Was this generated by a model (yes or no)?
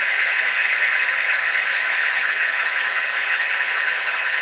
yes